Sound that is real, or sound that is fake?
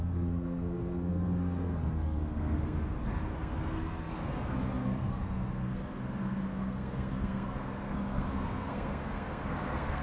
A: fake